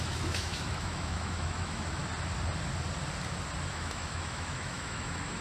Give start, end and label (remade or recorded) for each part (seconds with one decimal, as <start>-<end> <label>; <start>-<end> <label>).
0.0-2.0 remade; 2.0-3.7 recorded; 3.7-5.4 remade